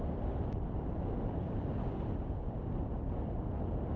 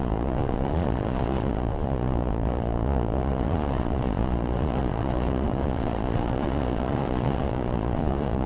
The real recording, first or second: first